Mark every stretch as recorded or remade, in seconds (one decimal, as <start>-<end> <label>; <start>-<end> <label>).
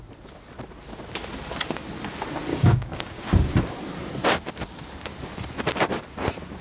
0.0-2.5 recorded; 2.5-3.3 remade; 3.3-6.6 recorded